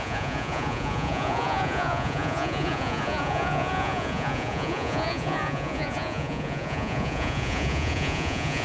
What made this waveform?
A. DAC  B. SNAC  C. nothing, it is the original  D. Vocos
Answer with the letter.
D